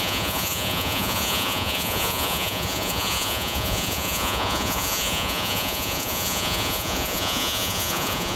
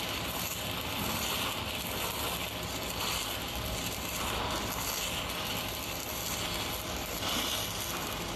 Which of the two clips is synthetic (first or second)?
first